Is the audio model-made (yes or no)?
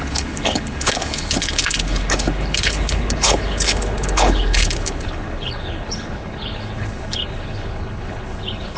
yes